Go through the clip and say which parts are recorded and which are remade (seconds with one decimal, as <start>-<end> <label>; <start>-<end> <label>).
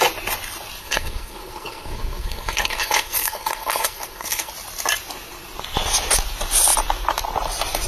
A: 0.0-0.8 recorded; 0.8-4.5 remade; 4.5-7.9 recorded